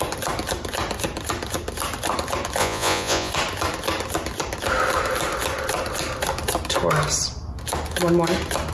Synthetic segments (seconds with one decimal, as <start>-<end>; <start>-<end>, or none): 2.6-3.3